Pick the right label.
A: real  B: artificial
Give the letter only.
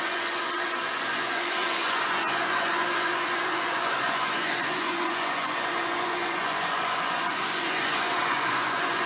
B